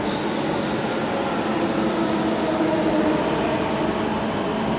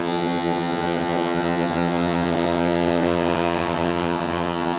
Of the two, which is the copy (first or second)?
second